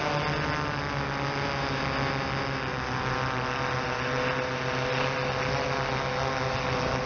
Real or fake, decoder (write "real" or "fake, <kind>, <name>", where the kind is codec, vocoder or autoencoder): real